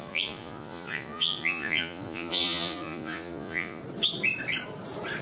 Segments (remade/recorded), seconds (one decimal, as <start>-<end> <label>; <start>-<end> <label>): 0.0-3.8 remade; 3.8-5.2 recorded